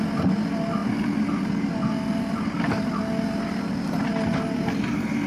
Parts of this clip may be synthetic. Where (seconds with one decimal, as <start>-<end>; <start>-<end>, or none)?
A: none